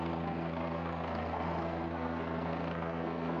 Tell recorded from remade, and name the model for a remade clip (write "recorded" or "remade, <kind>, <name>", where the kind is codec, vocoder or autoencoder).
remade, codec, SNAC